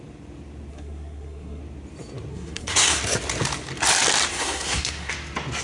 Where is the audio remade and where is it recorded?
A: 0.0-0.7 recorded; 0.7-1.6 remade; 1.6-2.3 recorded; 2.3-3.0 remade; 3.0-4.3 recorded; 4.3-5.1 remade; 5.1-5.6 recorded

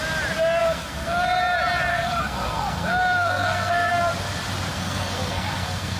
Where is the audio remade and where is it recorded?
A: 0.0-0.6 recorded; 0.6-1.4 remade; 1.4-1.9 recorded; 1.9-3.9 remade; 3.9-4.7 recorded; 4.7-6.0 remade

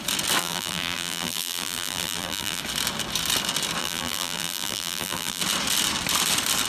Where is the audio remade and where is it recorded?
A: 0.0-0.4 recorded; 0.4-2.6 remade; 2.6-3.8 recorded; 3.8-5.4 remade; 5.4-6.7 recorded

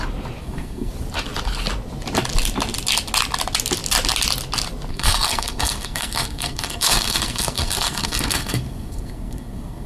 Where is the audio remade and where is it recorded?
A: 0.0-0.4 recorded; 0.4-0.9 remade; 0.9-4.9 recorded; 4.9-9.9 remade

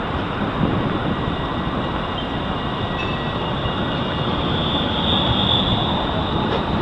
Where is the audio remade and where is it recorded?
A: 0.0-6.8 recorded

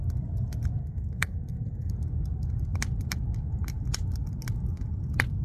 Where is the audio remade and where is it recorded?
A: 0.0-0.8 recorded; 0.8-1.9 remade; 1.9-5.4 recorded